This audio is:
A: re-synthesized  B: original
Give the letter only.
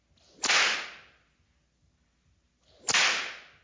B